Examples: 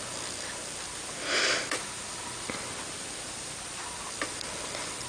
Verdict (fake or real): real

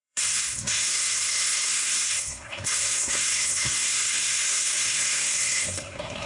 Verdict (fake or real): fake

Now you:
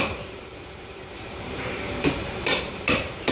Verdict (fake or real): fake